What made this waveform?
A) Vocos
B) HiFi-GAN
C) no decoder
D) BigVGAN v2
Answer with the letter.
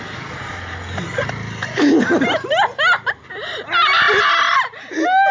C